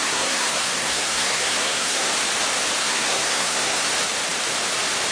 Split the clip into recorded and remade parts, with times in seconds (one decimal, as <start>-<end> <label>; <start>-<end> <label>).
0.0-2.1 remade; 2.1-2.8 recorded; 2.8-3.9 remade; 3.9-5.1 recorded